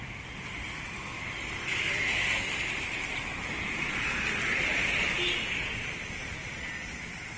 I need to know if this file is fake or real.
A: real